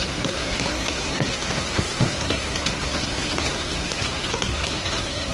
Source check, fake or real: fake